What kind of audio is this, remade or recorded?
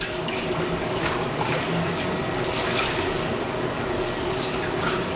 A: remade